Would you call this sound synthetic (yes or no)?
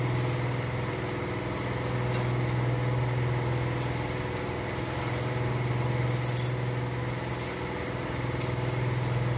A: no